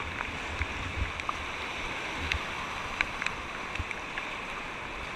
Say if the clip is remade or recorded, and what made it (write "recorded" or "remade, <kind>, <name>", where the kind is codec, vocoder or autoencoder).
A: recorded